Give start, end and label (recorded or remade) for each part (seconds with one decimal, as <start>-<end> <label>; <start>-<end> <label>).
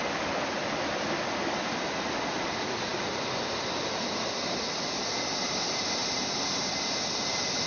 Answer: 0.0-7.7 recorded